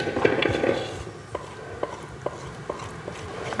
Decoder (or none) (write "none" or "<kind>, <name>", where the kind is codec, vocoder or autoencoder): none